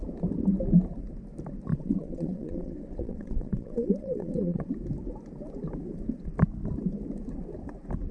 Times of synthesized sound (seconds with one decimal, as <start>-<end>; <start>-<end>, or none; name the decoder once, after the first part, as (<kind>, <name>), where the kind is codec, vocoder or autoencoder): 1.7-4.7 (vocoder, WaveNeXt)